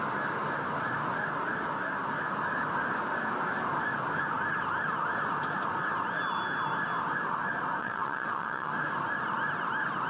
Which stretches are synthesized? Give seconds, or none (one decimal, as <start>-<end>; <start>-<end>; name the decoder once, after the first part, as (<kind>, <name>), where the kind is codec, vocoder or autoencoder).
7.8-8.7 (vocoder, WaveNeXt)

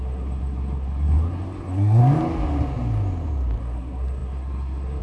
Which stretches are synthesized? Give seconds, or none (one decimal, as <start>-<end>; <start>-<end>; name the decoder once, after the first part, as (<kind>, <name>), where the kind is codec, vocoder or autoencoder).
0.0-2.0 (codec, SNAC); 3.6-5.0